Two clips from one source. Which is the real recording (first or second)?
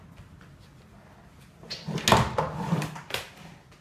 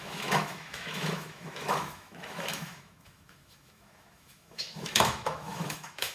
first